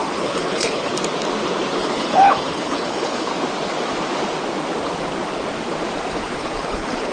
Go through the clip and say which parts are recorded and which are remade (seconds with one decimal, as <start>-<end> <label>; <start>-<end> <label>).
0.0-0.9 remade; 0.9-1.8 recorded; 1.8-3.3 remade; 3.3-6.1 recorded; 6.1-7.1 remade

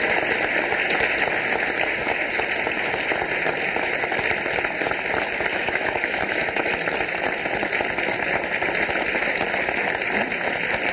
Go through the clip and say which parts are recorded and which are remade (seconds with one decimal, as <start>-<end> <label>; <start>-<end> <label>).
0.0-5.5 recorded; 5.5-6.7 remade; 6.7-10.9 recorded